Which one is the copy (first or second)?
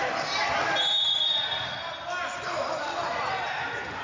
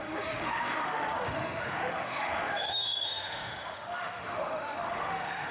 second